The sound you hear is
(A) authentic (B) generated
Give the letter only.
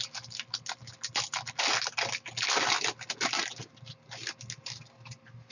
A